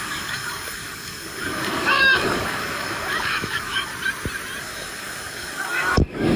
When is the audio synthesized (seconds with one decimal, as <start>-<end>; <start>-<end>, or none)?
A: 0.0-3.9; 4.6-6.4